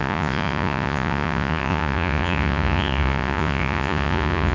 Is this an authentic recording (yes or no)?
no